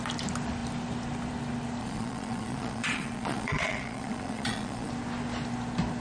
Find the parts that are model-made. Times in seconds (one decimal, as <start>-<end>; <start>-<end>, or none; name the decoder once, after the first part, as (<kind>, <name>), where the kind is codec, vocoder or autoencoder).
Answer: 1.8-4.9 (vocoder, Vocos)